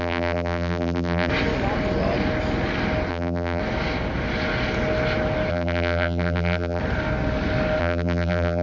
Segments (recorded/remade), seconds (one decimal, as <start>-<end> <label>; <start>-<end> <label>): 0.0-1.3 remade; 1.3-3.1 recorded; 3.1-3.6 remade; 3.6-5.5 recorded; 5.5-6.8 remade; 6.8-7.8 recorded; 7.8-8.6 remade